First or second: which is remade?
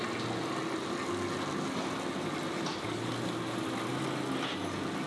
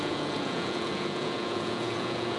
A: second